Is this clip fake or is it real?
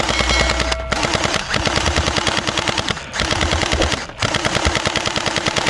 real